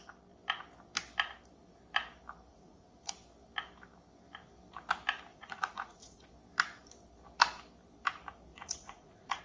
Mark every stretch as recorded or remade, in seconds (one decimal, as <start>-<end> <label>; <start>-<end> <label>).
0.0-2.5 recorded; 2.5-3.1 remade; 3.1-5.3 recorded; 5.3-6.3 remade; 6.3-8.5 recorded; 8.5-9.4 remade